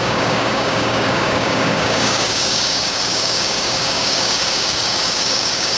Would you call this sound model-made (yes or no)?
yes